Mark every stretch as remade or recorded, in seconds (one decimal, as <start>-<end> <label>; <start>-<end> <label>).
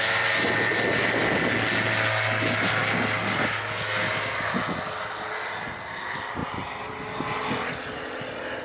0.0-8.6 recorded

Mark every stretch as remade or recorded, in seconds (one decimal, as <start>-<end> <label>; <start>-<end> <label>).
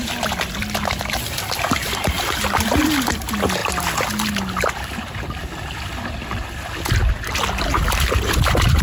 0.0-8.8 recorded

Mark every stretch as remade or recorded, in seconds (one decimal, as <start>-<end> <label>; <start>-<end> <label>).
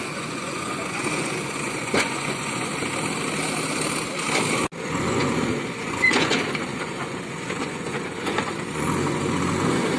0.0-2.7 remade; 2.7-4.8 recorded; 4.8-10.0 remade